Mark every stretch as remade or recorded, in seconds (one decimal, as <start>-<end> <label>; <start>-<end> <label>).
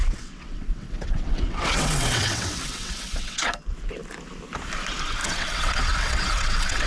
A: 0.0-3.5 remade; 3.5-5.2 recorded; 5.2-6.9 remade